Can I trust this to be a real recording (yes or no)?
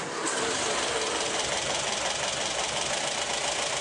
yes